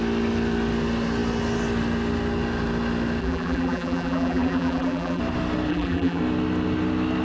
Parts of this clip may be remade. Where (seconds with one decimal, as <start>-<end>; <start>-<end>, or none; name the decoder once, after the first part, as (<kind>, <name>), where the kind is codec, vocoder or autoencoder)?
3.2-5.2 (vocoder, BigVGAN v2); 5.7-6.2